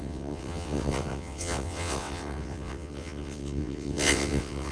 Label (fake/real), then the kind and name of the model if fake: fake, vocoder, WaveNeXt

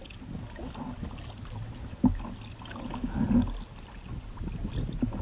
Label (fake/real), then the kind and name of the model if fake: real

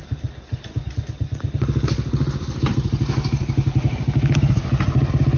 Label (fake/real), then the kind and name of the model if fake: real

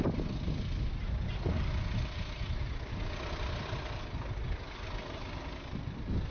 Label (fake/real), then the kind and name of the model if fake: real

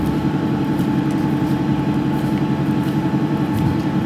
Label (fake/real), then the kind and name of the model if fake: fake, vocoder, BigVGAN v2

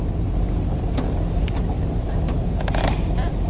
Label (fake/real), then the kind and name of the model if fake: real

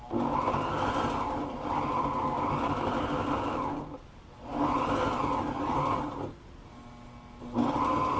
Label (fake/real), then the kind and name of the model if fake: real